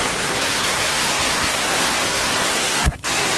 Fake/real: fake